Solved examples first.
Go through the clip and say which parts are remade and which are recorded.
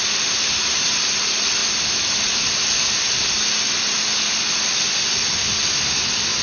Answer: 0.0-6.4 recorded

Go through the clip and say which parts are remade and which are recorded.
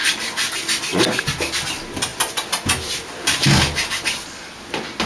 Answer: 0.0-5.1 recorded